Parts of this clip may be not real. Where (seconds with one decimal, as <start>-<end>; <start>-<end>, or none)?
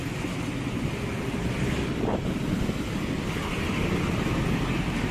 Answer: none